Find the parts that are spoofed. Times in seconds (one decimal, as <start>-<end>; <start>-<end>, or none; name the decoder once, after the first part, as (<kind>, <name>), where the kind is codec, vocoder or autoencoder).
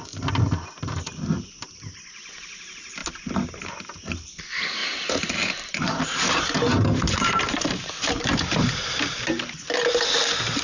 4.8-6.0 (vocoder, BigVGAN v2); 6.7-10.2